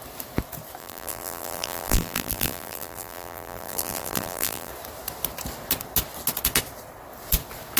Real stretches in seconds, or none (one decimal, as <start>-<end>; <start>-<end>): 0.0-0.8; 4.7-7.8